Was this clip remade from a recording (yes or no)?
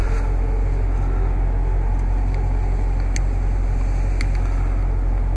no